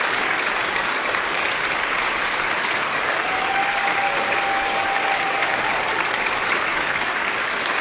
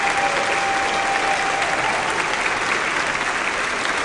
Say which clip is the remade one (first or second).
first